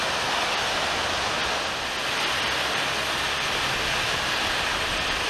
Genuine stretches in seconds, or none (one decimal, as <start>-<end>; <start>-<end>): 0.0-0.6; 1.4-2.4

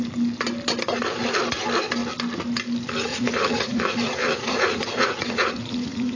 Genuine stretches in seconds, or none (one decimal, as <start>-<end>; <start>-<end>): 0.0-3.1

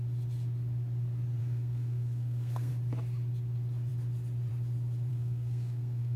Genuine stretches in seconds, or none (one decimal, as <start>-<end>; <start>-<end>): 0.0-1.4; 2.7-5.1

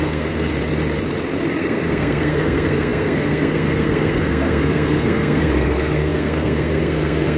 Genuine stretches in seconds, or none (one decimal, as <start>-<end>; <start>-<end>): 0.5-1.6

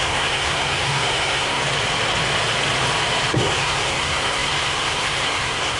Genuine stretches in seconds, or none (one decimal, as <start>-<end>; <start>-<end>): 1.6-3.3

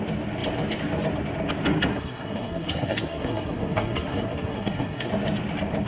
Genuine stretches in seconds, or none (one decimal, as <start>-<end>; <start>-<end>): 0.0-1.9; 5.1-5.9

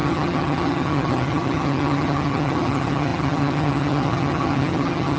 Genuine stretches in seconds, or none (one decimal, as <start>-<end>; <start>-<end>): none

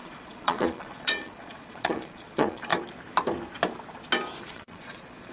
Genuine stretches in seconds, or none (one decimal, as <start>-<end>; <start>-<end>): 2.7-4.4